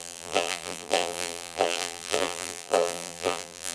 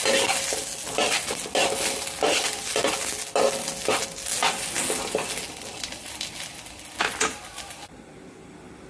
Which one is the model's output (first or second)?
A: first